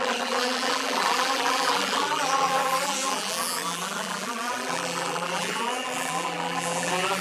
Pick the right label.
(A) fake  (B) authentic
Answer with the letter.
A